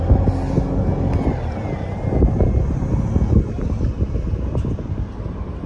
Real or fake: real